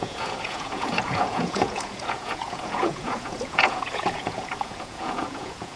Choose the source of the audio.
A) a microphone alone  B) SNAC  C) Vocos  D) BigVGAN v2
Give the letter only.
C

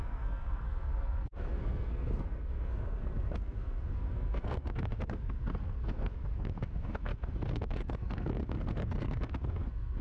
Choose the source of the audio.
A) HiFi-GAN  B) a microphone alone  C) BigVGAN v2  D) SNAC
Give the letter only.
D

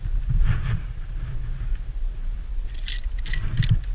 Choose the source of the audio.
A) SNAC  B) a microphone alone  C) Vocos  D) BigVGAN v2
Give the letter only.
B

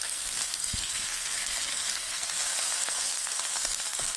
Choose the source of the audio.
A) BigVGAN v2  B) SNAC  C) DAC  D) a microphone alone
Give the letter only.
B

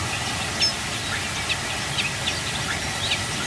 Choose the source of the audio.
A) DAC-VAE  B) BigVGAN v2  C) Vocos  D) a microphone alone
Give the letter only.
D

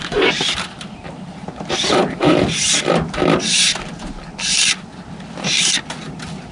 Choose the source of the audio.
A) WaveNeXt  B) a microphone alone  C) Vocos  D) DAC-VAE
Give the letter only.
B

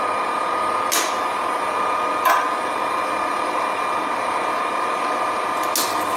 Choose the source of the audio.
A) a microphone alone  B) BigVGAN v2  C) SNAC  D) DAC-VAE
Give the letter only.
A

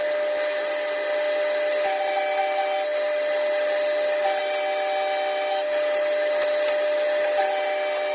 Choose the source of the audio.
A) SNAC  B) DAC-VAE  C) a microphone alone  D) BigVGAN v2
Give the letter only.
C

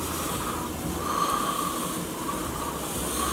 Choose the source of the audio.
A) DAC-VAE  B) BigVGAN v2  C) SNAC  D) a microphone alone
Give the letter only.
D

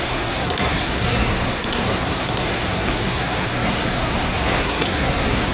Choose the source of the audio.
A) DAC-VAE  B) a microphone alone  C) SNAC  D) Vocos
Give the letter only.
C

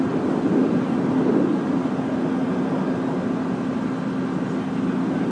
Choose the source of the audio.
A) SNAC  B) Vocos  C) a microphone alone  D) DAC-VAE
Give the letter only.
C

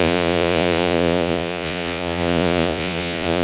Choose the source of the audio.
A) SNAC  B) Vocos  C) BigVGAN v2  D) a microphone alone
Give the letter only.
B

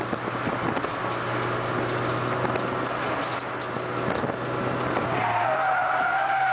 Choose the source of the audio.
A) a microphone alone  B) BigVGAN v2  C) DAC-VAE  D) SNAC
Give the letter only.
A